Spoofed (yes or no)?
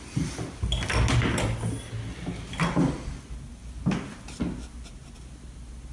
no